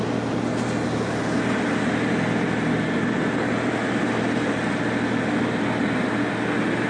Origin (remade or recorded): recorded